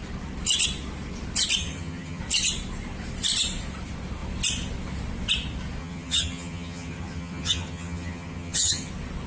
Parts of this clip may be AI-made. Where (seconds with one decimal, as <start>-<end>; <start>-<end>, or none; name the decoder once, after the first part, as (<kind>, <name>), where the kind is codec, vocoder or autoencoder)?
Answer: 1.6-2.2 (vocoder, HiFi-GAN); 5.8-8.9